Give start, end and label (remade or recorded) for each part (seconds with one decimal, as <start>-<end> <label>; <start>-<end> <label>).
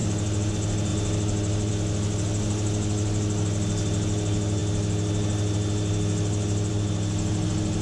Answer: 0.0-7.8 recorded